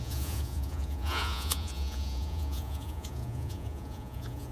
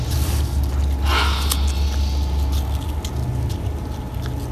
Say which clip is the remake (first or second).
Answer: first